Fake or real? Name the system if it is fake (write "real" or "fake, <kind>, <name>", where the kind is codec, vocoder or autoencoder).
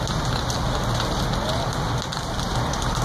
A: real